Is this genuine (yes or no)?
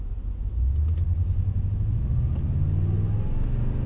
yes